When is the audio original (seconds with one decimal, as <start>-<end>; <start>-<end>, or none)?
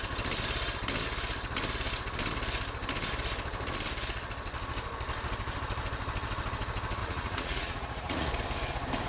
0.0-7.0; 8.3-9.1